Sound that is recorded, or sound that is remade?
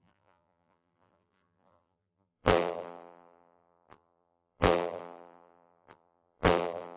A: remade